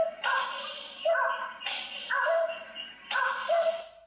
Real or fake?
real